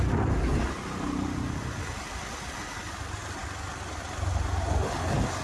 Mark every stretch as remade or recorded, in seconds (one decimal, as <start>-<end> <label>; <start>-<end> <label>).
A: 0.0-5.4 recorded